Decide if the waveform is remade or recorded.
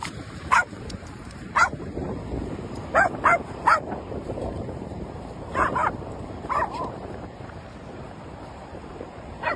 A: remade